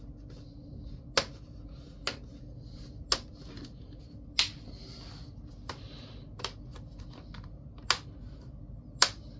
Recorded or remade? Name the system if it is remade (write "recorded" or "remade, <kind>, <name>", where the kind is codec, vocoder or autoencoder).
recorded